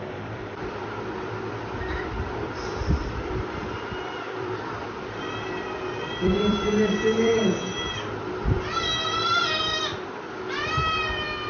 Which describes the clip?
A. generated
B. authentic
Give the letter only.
A